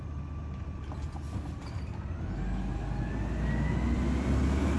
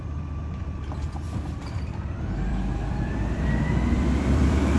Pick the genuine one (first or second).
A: first